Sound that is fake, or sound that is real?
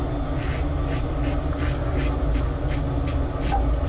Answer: real